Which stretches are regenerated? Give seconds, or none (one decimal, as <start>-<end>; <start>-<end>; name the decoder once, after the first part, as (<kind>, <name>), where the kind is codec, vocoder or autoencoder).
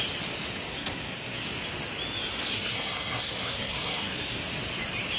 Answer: 0.7-1.4 (codec, SNAC); 2.5-4.4